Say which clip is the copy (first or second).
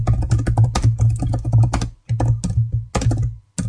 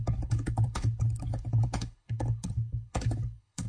second